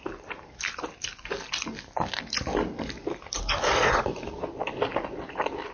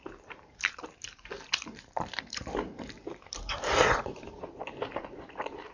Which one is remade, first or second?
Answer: second